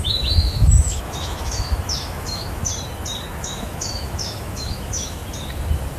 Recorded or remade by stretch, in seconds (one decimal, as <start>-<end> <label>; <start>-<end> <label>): 0.0-2.7 remade; 2.7-3.4 recorded; 3.4-5.2 remade; 5.2-6.0 recorded